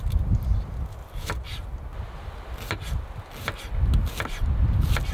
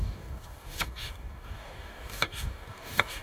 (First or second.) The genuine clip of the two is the first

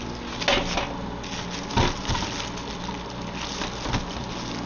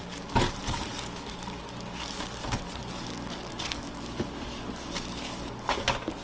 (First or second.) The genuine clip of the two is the first